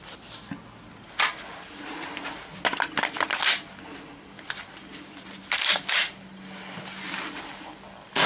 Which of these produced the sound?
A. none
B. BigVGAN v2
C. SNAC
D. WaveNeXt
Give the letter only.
A